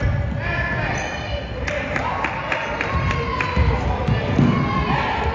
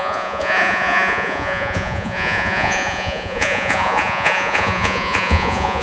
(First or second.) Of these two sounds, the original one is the first